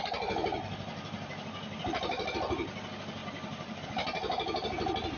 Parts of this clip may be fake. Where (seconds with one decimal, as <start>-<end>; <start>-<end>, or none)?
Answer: 0.9-2.3; 3.2-3.8